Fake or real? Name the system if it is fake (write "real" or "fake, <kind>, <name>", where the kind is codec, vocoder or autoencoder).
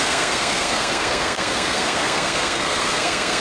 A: fake, codec, SNAC